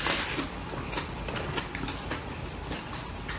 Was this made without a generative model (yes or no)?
yes